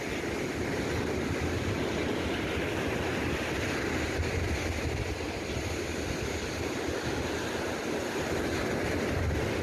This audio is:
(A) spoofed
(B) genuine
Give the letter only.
B